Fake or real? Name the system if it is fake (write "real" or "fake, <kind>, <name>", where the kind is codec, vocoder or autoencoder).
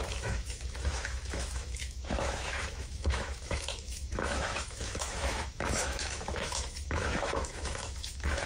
fake, autoencoder, DAC-VAE